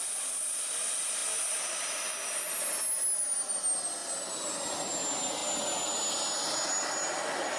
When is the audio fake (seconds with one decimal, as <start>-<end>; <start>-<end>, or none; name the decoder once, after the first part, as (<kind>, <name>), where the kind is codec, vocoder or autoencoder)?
none